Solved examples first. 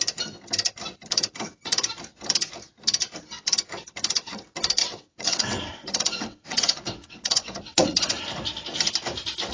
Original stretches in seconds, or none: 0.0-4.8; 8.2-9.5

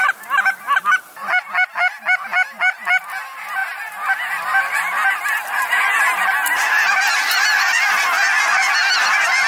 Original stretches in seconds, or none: 0.0-9.5

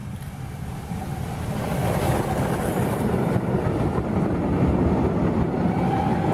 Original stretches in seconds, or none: 3.7-6.3

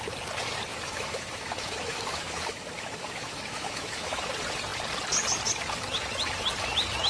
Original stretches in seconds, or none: 0.0-0.7; 4.3-7.1

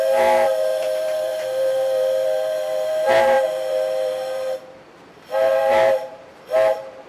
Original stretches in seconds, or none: none

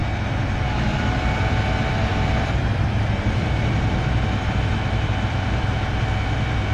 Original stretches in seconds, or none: 0.0-1.0

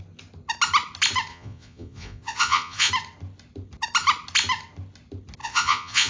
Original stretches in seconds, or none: 0.0-1.3; 2.9-5.4